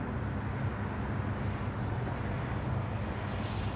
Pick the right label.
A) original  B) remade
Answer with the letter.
A